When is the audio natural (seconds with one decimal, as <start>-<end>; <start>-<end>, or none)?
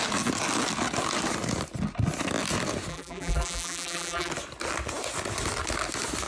0.0-2.9; 4.3-6.3